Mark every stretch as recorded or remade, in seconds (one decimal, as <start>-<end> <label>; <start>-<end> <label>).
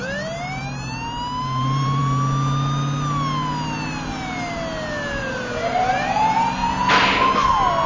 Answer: 0.0-0.6 remade; 0.6-1.4 recorded; 1.4-2.0 remade; 2.0-5.2 recorded; 5.2-6.6 remade; 6.6-7.9 recorded